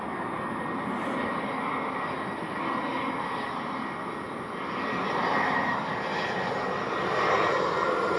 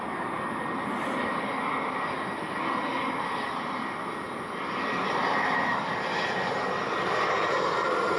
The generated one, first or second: second